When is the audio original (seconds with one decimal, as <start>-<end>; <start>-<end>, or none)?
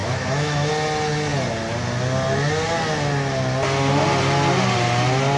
0.7-5.4